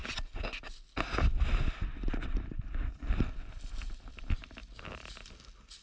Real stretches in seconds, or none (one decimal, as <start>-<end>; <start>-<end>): 0.0-5.8